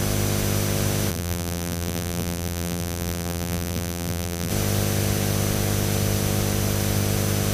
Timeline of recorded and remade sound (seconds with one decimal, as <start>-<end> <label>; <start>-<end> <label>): 0.0-1.1 recorded; 1.1-4.5 remade; 4.5-7.5 recorded